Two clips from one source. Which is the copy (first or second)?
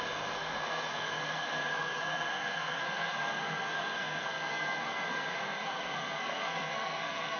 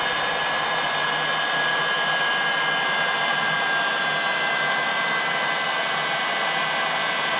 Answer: first